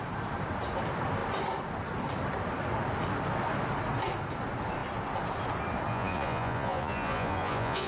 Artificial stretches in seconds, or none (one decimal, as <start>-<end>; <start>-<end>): 5.9-7.9

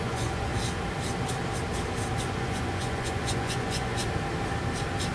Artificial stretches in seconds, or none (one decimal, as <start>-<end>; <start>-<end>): 0.0-0.5; 2.2-4.0